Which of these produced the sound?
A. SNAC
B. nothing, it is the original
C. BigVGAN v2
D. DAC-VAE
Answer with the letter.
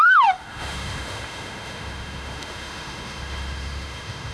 D